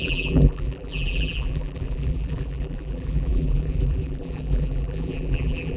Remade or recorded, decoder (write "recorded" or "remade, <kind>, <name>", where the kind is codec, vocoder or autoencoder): remade, vocoder, BigVGAN v2